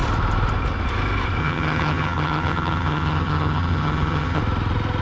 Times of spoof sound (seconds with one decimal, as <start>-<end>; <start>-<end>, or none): 1.4-4.4